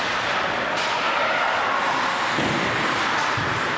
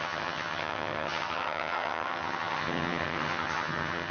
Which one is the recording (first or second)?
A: first